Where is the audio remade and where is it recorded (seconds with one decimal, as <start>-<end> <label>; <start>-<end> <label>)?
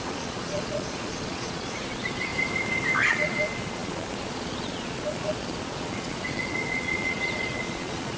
0.0-2.3 remade; 2.3-3.1 recorded; 3.1-8.2 remade